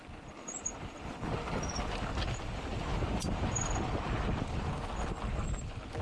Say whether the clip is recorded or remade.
recorded